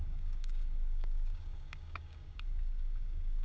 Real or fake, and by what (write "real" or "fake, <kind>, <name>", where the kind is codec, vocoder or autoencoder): fake, codec, DAC